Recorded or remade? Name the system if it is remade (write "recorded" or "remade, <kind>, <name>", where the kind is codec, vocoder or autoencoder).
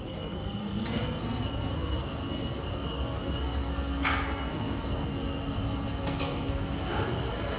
remade, codec, SNAC